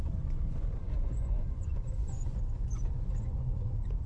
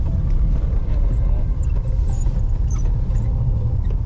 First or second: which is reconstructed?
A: first